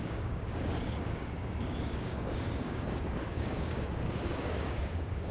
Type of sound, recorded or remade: remade